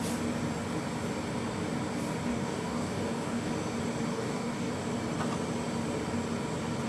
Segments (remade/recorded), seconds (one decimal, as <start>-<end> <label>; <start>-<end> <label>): 0.0-2.3 recorded; 2.3-3.5 remade; 3.5-4.1 recorded; 4.1-4.7 remade; 4.7-6.9 recorded